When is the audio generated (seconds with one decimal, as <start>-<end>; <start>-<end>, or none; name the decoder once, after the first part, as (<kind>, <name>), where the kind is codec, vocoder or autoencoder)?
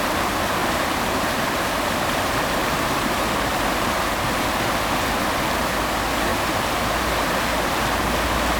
2.6-4.2 (vocoder, BigVGAN v2); 6.3-7.3